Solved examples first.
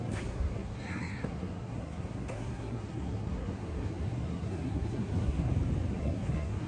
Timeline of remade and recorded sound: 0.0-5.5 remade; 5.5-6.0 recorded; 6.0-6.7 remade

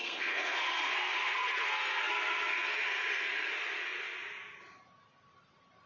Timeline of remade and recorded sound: 0.0-3.5 remade; 3.5-5.9 recorded

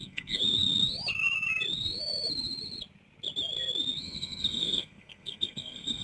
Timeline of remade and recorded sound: 0.0-0.4 remade; 0.4-4.0 recorded; 4.0-6.0 remade

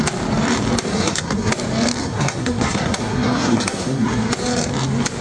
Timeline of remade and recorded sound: 0.0-0.9 recorded; 0.9-1.5 remade; 1.5-2.0 recorded; 2.0-4.3 remade; 4.3-5.2 recorded

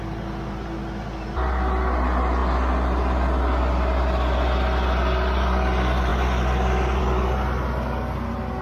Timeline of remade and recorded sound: 0.0-8.6 recorded

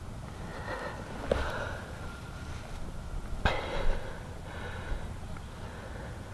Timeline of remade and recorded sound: 0.0-6.3 recorded

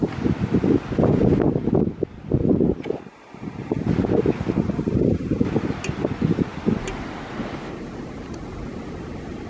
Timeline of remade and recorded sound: 0.0-9.5 recorded

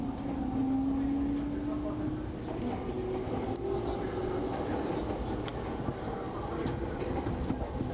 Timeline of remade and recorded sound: 0.0-7.9 recorded